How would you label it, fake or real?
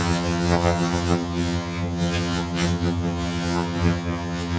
fake